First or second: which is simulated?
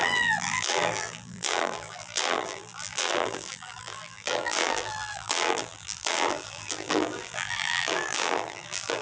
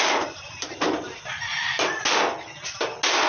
first